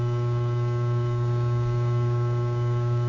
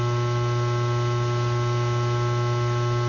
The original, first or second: second